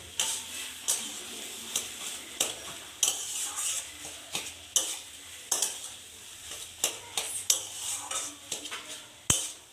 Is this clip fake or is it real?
real